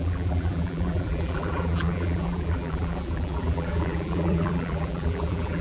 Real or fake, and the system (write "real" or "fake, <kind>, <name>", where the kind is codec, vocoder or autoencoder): fake, vocoder, BigVGAN v2